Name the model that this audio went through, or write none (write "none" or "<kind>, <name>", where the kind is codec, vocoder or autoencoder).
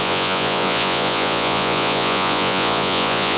vocoder, Vocos